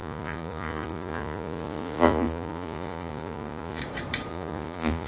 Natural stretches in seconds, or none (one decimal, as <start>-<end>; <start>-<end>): 3.8-4.3